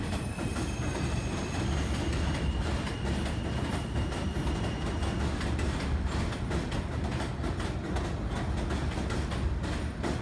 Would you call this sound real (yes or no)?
yes